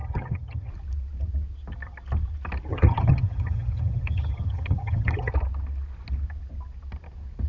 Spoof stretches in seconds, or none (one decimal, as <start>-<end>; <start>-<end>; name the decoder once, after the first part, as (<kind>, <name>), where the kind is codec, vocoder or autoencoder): 0.0-0.7 (vocoder, HiFi-GAN); 2.7-5.3